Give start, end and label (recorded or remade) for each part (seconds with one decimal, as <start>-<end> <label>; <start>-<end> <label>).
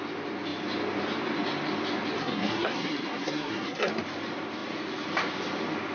0.0-2.2 recorded; 2.2-3.9 remade; 3.9-5.9 recorded